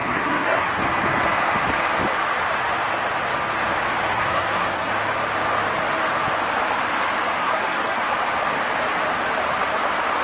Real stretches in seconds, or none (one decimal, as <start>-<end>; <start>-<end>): 0.8-4.1; 4.9-7.4; 8.0-10.2